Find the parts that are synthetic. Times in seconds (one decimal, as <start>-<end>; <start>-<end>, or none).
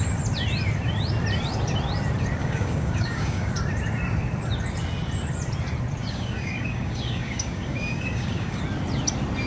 2.4-3.5; 6.0-8.6